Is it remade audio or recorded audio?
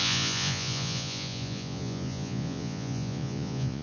remade